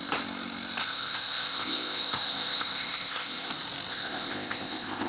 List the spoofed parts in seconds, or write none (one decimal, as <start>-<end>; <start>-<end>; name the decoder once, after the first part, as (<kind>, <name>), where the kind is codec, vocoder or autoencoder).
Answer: 0.8-3.5 (codec, ZipCodec); 3.9-5.1

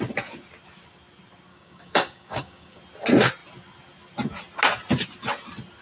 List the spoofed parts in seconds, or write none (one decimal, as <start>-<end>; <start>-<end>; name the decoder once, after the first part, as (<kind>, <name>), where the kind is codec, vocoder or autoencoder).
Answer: 1.5-2.8 (codec, DAC)

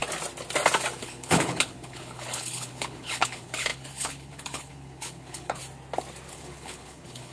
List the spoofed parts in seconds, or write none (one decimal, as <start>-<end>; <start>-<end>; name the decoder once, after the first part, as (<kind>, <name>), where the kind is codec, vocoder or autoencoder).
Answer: 1.0-5.6 (codec, HILCodec); 6.3-7.3

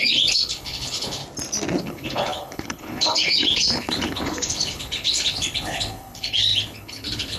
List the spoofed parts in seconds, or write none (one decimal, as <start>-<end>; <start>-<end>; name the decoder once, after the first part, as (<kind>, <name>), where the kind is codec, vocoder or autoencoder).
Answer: 0.0-1.2 (codec, HILCodec); 1.8-7.4